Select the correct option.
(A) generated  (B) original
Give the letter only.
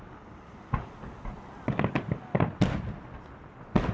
B